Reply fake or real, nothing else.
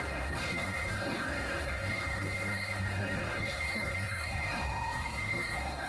fake